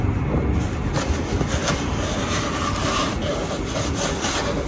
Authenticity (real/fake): real